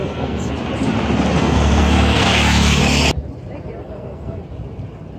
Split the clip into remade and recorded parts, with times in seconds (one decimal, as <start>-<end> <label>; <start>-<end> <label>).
0.0-0.5 remade; 0.5-1.4 recorded; 1.4-2.8 remade; 2.8-3.8 recorded; 3.8-4.4 remade; 4.4-5.2 recorded